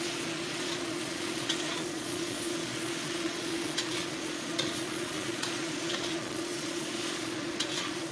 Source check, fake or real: fake